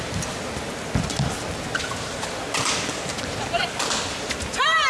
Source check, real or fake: real